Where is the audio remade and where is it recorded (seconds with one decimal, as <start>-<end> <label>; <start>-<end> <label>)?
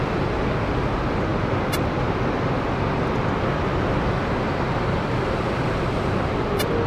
0.0-6.9 recorded